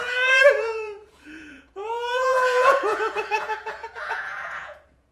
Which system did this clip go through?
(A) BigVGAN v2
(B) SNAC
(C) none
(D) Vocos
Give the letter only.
D